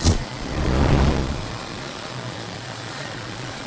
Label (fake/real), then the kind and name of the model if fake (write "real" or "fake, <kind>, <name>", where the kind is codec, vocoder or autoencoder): fake, vocoder, Vocos